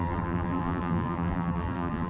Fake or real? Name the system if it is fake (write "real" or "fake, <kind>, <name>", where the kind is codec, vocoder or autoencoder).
fake, vocoder, BigVGAN v2